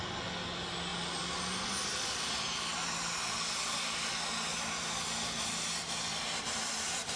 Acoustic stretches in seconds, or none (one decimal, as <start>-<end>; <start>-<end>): 0.0-7.2